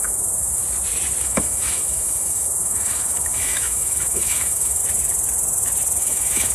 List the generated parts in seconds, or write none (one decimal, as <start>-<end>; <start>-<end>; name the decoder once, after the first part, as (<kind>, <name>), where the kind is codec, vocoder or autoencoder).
0.0-0.6 (autoencoder, DAC-VAE); 1.2-4.8; 6.0-6.5